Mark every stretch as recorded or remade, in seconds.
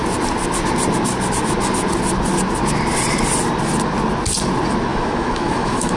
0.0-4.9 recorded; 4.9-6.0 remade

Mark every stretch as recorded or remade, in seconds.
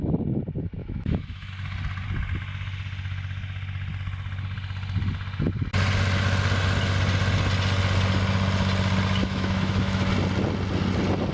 0.0-0.8 recorded; 0.8-1.5 remade; 1.5-9.2 recorded; 9.2-10.1 remade; 10.1-11.3 recorded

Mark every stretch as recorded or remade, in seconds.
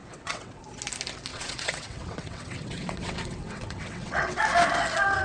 0.0-0.6 remade; 0.6-1.3 recorded; 1.3-4.4 remade; 4.4-5.2 recorded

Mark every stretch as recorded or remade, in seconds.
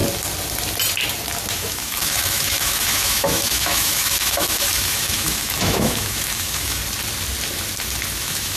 0.0-1.5 recorded; 1.5-6.8 remade; 6.8-8.2 recorded; 8.2-8.6 remade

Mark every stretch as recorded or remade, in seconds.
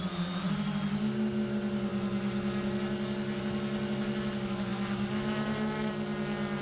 0.0-6.6 recorded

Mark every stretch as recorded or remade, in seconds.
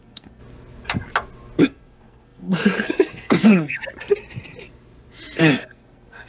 0.0-0.4 remade; 0.4-1.6 recorded; 1.6-3.8 remade; 3.8-5.4 recorded; 5.4-6.3 remade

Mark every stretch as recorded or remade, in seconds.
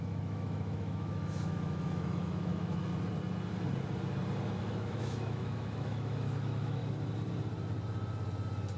0.0-2.9 remade; 2.9-4.6 recorded; 4.6-6.8 remade; 6.8-8.8 recorded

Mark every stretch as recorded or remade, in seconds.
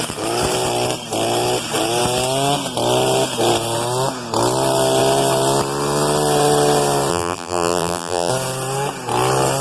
0.0-7.1 recorded; 7.1-8.3 remade; 8.3-9.6 recorded